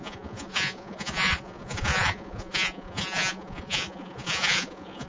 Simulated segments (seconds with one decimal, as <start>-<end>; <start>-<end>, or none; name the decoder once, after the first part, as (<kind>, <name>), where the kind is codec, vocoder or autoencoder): 0.0-5.1 (vocoder, Vocos)